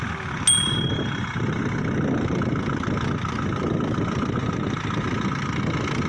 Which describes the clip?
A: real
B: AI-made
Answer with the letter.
A